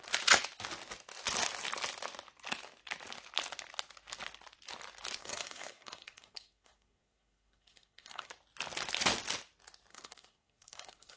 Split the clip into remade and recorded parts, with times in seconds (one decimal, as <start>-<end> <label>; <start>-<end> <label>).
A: 0.0-5.2 recorded; 5.2-8.3 remade; 8.3-9.9 recorded; 9.9-11.2 remade